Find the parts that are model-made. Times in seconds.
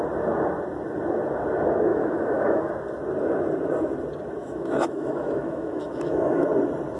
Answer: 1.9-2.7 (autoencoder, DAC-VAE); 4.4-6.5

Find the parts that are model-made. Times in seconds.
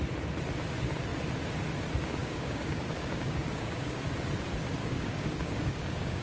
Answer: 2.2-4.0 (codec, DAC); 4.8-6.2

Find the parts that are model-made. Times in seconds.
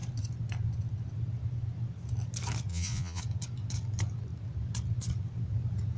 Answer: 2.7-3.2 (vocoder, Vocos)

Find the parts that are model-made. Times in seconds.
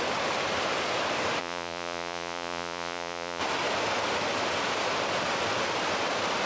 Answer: 1.4-3.4 (vocoder, Vocos)